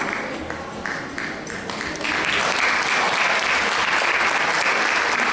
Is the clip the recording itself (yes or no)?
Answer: yes